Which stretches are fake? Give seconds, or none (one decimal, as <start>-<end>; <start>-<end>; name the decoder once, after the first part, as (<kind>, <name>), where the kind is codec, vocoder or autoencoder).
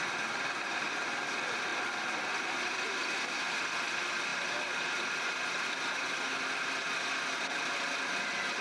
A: none